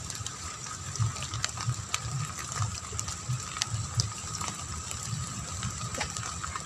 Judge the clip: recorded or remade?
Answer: recorded